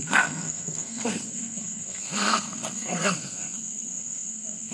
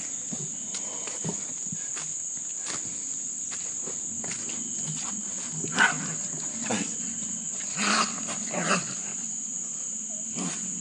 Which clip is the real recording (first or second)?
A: second